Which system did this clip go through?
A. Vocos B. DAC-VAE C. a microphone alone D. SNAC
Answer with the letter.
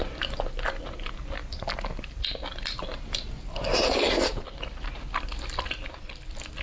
C